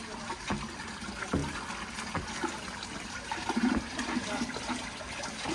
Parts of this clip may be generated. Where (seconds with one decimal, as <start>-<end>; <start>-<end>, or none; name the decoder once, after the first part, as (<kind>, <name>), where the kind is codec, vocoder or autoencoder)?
none